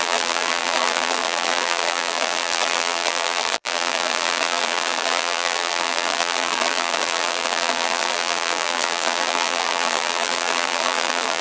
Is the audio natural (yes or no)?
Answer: no